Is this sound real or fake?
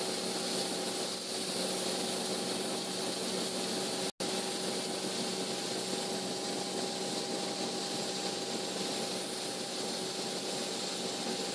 real